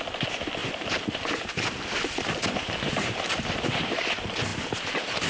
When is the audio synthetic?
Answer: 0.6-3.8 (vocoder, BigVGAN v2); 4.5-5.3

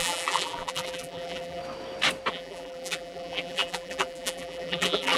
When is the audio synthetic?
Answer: 0.0-1.6 (vocoder, BigVGAN v2); 2.3-5.2

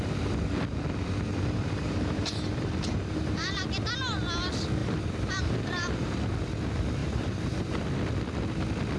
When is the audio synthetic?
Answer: 1.3-3.6 (vocoder, BigVGAN v2); 4.8-6.3; 7.0-7.8

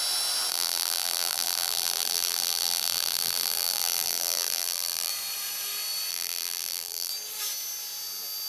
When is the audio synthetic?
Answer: 0.5-5.1 (vocoder, BigVGAN v2); 6.1-7.1